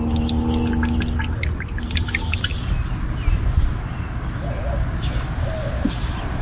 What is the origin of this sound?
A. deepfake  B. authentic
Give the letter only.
B